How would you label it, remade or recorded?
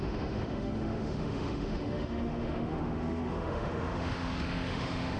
remade